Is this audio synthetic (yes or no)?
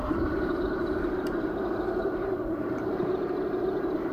yes